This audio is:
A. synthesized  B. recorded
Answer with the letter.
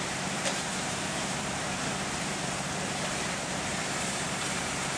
A